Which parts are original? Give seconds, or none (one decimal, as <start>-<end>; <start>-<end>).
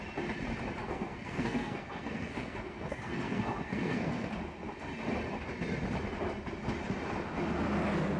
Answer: 0.0-0.8; 4.3-8.2